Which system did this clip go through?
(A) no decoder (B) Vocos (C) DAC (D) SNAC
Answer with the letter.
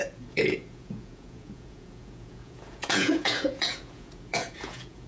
B